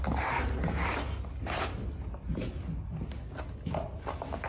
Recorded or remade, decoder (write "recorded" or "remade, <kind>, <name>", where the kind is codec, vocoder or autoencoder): recorded